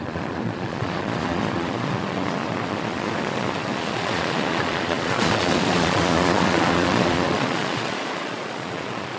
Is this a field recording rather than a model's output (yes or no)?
no